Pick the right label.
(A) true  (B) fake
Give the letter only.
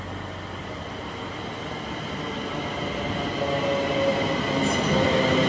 A